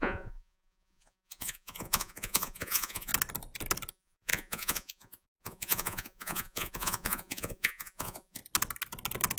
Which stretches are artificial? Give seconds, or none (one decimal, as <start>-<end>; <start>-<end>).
0.0-3.1; 3.9-8.4